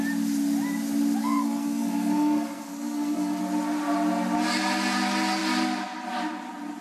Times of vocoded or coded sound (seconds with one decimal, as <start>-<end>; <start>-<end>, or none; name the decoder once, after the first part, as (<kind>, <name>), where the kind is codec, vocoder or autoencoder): 1.2-3.4 (codec, SNAC)